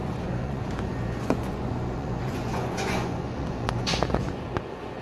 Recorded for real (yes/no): no